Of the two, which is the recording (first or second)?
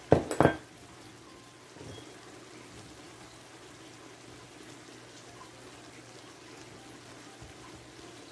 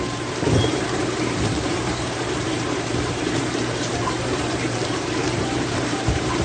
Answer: first